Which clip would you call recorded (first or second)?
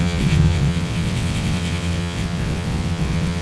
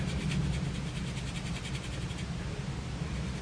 second